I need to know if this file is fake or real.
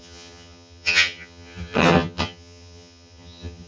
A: fake